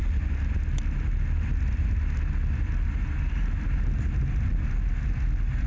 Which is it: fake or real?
real